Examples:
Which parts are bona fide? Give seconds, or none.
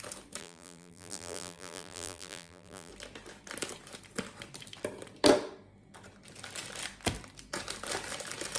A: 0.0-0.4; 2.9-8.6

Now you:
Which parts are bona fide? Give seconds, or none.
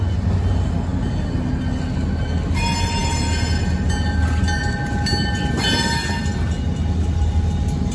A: 0.0-7.9